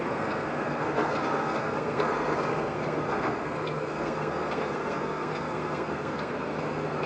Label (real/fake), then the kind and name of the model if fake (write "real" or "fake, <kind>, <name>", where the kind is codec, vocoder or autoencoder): fake, codec, SNAC